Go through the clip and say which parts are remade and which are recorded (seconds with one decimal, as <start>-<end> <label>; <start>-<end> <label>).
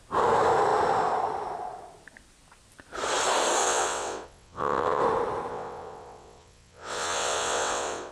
0.0-3.6 recorded; 3.6-5.0 remade; 5.0-5.5 recorded; 5.5-8.1 remade